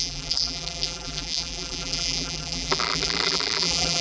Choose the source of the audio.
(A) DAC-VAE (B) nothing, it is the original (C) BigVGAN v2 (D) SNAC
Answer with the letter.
C